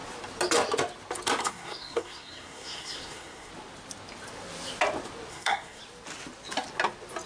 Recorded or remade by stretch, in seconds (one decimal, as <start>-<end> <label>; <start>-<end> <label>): 0.0-1.4 recorded; 1.4-3.5 remade; 3.5-5.3 recorded; 5.3-5.8 remade; 5.8-7.3 recorded